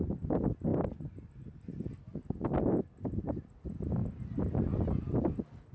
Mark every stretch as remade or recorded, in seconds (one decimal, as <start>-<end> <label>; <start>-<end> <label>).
0.0-5.7 recorded